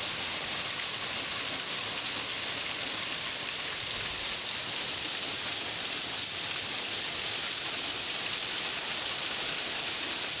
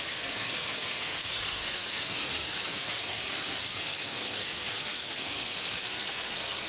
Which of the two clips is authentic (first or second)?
first